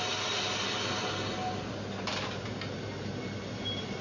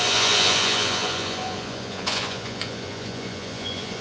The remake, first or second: second